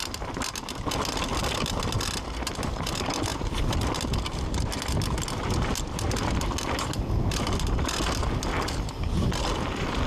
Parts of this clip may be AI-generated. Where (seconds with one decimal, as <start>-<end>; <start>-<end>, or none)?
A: none